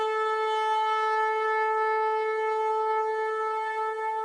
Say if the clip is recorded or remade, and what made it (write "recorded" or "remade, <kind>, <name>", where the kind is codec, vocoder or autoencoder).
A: recorded